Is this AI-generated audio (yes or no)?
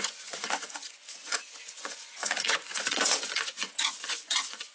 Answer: yes